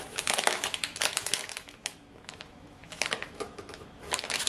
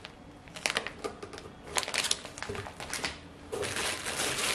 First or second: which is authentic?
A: second